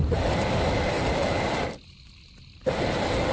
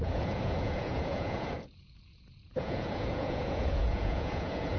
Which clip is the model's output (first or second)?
second